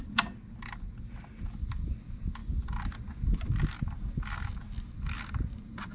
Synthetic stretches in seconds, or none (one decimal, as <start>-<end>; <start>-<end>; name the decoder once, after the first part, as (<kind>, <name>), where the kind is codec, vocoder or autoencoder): none

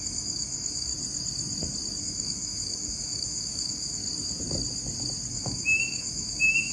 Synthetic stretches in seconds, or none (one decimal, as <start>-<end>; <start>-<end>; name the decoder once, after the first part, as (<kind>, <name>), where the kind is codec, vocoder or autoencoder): 0.0-0.9 (autoencoder, DAC-VAE); 2.0-4.0; 5.3-6.7

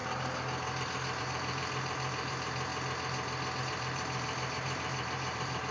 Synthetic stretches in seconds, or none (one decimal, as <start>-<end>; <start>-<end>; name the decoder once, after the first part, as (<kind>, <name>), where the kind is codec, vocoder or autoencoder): 1.2-2.7 (vocoder, BigVGAN v2); 3.6-5.7

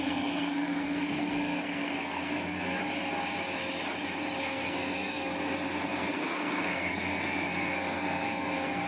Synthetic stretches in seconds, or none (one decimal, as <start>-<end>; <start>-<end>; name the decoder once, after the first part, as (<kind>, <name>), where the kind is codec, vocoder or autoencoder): 0.0-2.8 (codec, SNAC); 4.4-5.3; 5.8-8.9

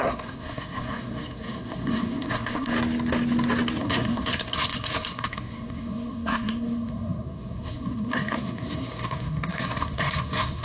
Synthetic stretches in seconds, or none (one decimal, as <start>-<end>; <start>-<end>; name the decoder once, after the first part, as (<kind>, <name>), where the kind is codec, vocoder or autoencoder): 0.0-2.7 (codec, SNAC); 3.8-10.6

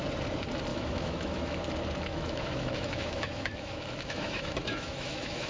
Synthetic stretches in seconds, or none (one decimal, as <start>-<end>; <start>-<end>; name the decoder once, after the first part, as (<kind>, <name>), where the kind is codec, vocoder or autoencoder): 0.7-1.6 (autoencoder, DAC-VAE); 2.1-5.5

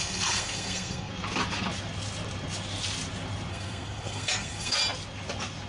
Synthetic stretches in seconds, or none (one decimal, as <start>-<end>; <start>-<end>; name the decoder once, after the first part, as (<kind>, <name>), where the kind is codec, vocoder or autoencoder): 0.0-1.1 (codec, SNAC); 3.5-4.8

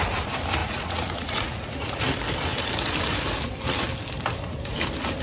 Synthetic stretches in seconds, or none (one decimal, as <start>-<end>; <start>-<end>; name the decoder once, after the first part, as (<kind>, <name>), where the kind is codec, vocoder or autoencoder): 0.6-2.0 (vocoder, Vocos)